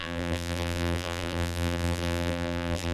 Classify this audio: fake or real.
fake